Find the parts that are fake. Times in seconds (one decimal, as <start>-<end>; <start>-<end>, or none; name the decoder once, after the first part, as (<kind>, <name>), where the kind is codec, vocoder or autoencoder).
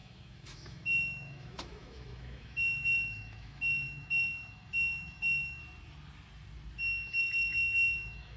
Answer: 0.0-5.6 (autoencoder, DAC-VAE); 7.2-8.4